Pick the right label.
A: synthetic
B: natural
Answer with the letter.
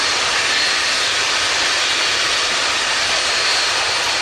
B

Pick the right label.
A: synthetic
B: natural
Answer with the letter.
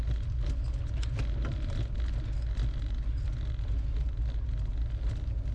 B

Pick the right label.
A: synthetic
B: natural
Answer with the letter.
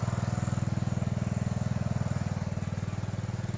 B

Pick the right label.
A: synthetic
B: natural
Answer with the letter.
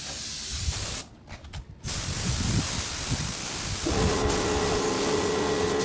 B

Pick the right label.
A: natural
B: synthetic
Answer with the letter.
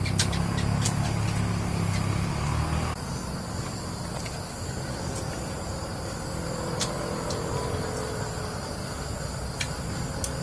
A